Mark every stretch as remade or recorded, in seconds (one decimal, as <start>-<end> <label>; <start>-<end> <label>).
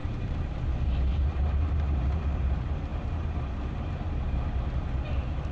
0.0-0.6 remade; 0.6-1.1 recorded; 1.1-2.0 remade; 2.0-2.9 recorded; 2.9-4.2 remade; 4.2-5.5 recorded